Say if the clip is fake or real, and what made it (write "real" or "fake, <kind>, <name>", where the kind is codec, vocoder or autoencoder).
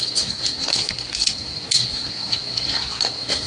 fake, codec, SNAC